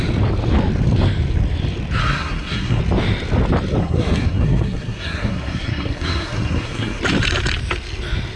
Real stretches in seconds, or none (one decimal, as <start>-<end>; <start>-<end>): 0.0-2.0; 2.8-3.8; 7.0-8.4